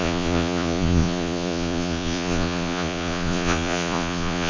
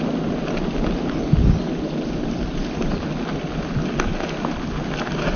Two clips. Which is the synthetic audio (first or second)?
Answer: first